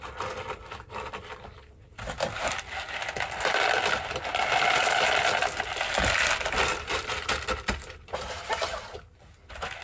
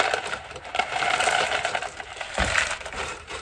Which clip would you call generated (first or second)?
second